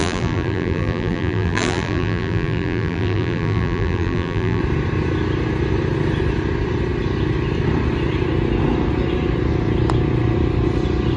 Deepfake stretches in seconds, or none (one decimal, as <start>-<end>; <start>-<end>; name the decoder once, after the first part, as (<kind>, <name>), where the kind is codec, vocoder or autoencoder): 0.0-4.6 (vocoder, BigVGAN v2)